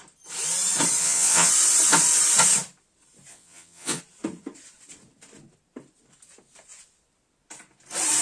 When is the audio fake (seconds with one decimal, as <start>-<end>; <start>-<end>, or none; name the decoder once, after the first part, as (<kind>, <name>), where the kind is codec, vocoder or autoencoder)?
1.0-1.5 (vocoder, WaveNeXt); 3.3-4.0